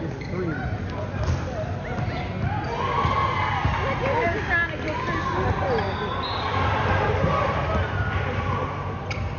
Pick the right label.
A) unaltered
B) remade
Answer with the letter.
A